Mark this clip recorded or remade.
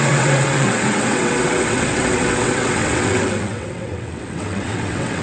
remade